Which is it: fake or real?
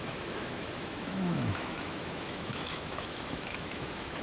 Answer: fake